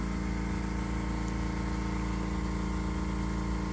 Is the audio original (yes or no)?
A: yes